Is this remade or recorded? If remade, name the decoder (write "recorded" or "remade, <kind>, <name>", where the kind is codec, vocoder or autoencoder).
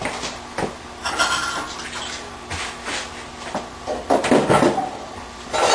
recorded